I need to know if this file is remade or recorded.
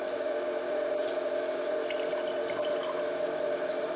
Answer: recorded